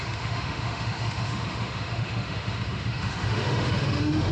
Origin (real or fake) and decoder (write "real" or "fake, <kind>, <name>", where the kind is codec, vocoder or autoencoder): fake, autoencoder, DAC-VAE